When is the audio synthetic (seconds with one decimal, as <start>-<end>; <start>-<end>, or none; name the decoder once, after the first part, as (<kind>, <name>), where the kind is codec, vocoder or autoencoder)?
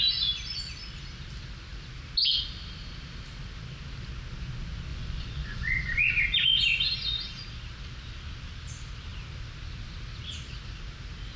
4.9-6.1 (vocoder, Vocos)